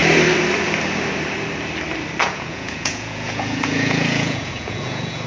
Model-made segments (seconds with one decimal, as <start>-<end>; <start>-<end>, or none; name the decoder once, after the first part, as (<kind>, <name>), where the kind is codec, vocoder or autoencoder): 2.2-5.3 (vocoder, Vocos)